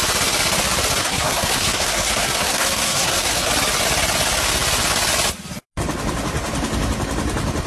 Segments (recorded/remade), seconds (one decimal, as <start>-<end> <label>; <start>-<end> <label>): 0.0-1.0 recorded; 1.0-3.5 remade; 3.5-7.7 recorded